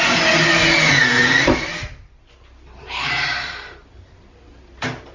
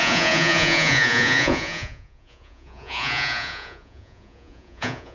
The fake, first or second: second